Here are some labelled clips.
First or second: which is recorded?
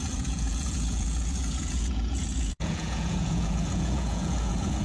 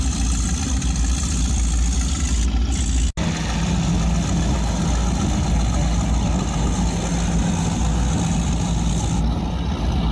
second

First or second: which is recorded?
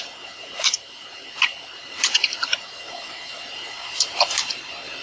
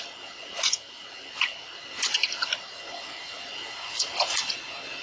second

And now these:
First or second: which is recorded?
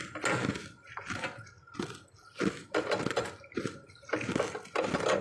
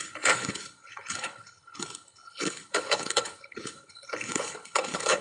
first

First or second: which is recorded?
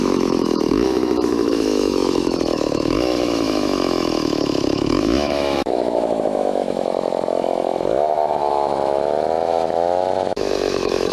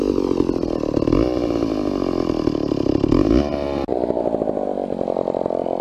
second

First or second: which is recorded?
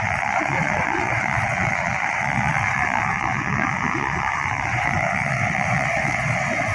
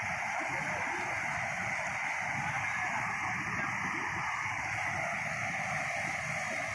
second